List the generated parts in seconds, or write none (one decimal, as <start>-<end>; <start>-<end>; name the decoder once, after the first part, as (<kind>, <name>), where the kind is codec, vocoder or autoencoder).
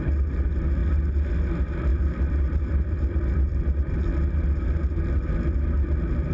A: 0.8-1.3 (vocoder, BigVGAN v2); 1.9-4.0